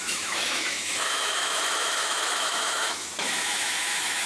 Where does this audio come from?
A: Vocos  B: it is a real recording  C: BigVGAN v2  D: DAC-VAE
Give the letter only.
D